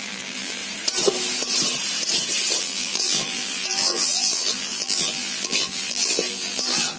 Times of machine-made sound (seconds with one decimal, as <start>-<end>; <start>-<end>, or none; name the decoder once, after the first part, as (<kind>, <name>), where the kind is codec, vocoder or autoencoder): 0.0-0.6 (vocoder, BigVGAN v2); 2.6-7.0